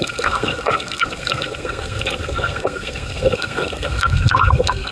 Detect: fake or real fake